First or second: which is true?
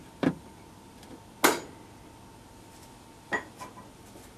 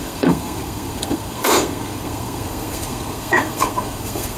first